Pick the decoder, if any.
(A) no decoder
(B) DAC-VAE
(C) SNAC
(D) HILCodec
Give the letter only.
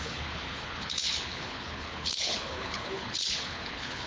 D